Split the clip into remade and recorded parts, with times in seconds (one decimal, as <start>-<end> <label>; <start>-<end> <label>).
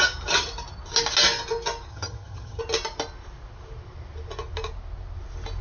0.0-1.9 recorded; 1.9-2.6 remade; 2.6-5.6 recorded